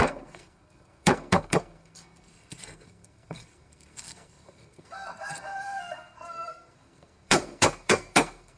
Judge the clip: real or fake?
fake